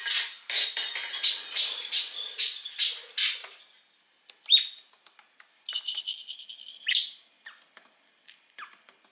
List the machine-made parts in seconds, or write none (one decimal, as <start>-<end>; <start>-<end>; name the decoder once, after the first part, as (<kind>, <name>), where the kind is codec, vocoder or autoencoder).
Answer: none